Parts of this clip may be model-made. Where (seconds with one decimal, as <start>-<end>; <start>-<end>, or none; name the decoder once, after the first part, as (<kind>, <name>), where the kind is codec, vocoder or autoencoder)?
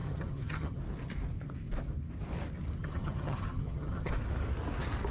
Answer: 0.0-0.8 (vocoder, HiFi-GAN); 2.8-4.1